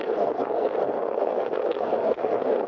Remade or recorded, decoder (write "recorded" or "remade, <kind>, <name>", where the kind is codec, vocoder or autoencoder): remade, codec, SNAC